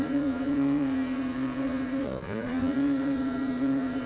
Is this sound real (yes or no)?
no